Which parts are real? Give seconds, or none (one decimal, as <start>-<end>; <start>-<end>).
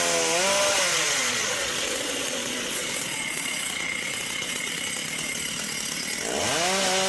0.0-0.9; 4.8-7.1